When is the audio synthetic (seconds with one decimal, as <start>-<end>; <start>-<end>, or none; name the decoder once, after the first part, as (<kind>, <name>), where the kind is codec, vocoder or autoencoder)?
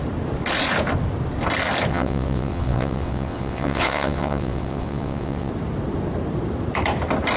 1.9-5.5 (vocoder, WaveNeXt)